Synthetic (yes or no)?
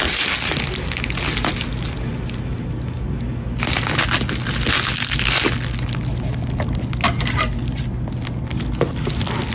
no